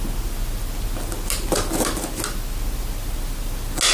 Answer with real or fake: real